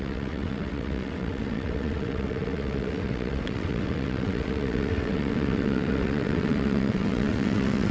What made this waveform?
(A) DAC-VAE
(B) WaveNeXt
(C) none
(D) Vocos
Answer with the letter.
B